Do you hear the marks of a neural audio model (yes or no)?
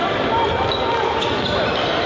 no